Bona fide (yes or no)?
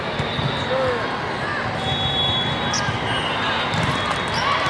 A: yes